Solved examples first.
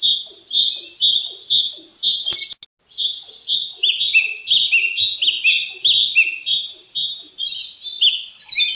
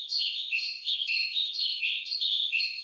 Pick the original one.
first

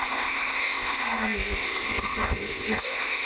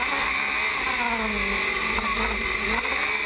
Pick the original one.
second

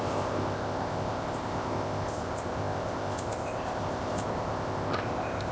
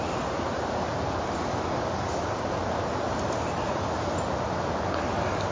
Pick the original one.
second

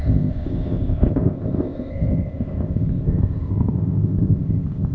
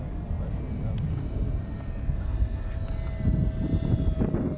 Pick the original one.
second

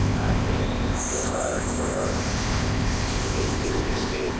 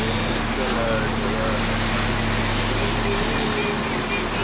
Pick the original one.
second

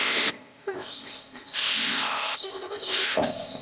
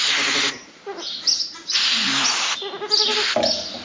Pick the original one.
second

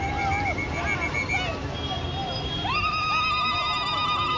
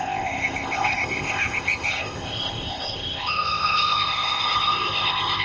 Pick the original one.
first